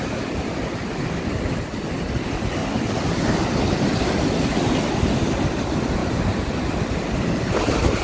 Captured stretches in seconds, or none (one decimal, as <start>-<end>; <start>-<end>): 0.0-8.0